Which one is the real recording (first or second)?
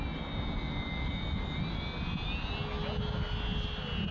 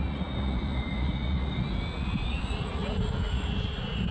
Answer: first